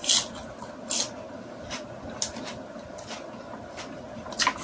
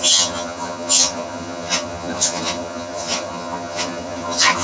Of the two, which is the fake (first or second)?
second